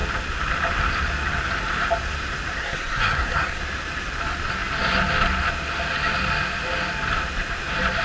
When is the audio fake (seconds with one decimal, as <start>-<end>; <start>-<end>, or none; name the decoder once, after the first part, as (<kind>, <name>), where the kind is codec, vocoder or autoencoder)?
2.6-3.6 (codec, SNAC)